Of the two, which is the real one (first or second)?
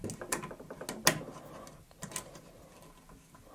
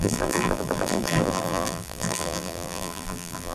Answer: first